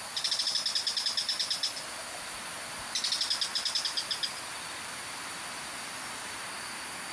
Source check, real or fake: real